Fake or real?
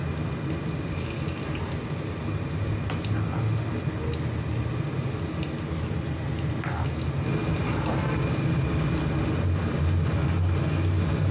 real